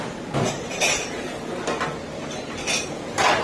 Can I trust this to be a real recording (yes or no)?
yes